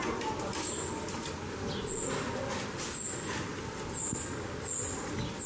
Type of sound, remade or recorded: recorded